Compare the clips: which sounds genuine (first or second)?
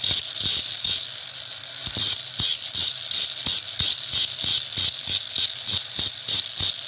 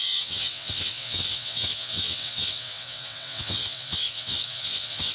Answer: first